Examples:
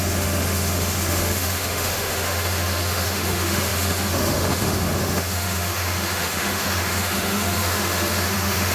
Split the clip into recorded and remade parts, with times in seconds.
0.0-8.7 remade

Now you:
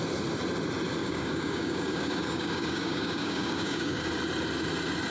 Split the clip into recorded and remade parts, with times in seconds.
0.0-1.0 recorded; 1.0-4.1 remade; 4.1-5.1 recorded

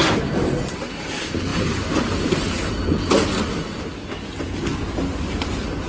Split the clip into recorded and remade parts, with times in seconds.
0.0-5.9 recorded

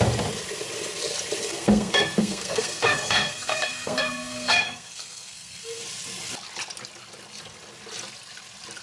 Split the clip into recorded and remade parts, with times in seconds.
0.0-1.4 recorded; 1.4-5.8 remade; 5.8-8.8 recorded